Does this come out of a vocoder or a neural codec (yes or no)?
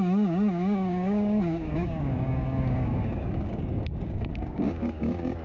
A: yes